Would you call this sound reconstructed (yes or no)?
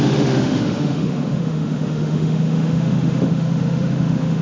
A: yes